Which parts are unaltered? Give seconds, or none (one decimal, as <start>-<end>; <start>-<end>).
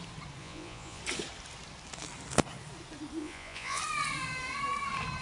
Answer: 0.0-0.4; 1.0-3.2; 3.8-5.2